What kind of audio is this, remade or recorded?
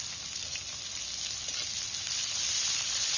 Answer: recorded